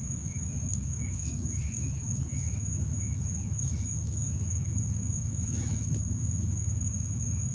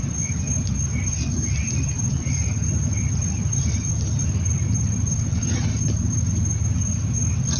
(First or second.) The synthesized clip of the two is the first